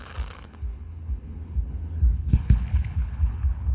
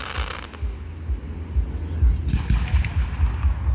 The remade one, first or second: first